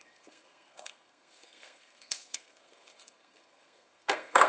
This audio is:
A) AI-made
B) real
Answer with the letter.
A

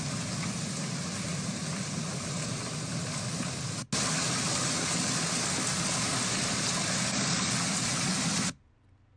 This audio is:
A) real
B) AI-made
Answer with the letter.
A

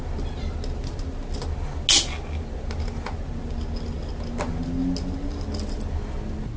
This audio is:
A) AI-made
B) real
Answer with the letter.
B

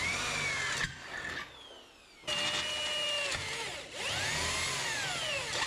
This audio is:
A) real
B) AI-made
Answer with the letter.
A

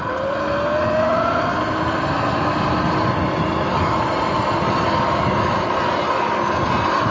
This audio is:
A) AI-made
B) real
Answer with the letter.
B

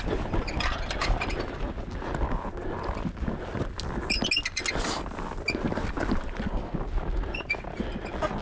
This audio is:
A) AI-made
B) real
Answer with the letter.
B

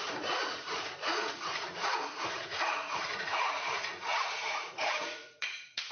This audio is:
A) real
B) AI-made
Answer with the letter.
B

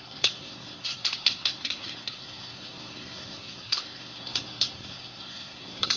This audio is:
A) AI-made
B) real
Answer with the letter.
A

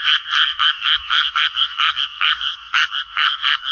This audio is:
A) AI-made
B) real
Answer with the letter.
A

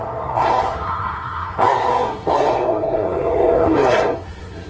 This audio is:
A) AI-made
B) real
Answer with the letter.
A